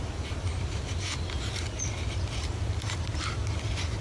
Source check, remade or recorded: recorded